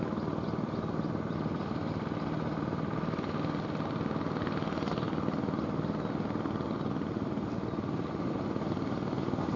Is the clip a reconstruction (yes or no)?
no